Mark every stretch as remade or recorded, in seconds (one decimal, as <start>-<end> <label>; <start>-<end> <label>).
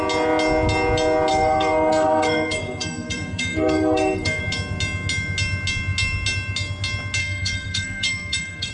0.0-1.3 recorded; 1.3-4.4 remade; 4.4-7.2 recorded; 7.2-8.7 remade